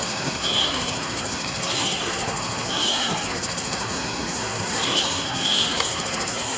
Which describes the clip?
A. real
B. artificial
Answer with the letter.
B